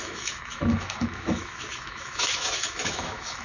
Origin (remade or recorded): remade